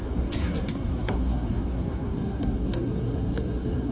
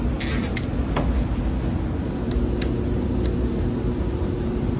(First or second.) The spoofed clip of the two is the first